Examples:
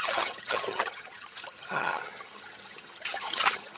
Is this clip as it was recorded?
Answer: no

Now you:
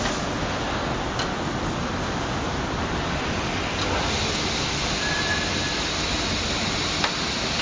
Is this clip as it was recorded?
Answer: yes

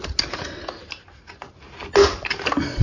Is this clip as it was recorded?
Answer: yes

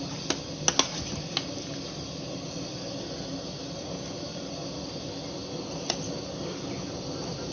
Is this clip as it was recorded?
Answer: yes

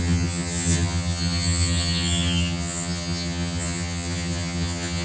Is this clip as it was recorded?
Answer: no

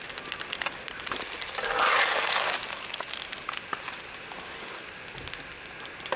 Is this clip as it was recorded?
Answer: yes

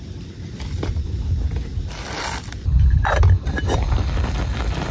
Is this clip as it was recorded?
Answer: yes